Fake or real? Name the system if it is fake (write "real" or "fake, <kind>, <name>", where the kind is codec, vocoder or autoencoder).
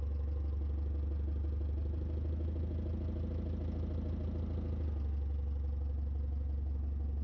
real